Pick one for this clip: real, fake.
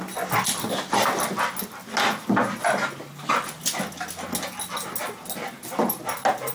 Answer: real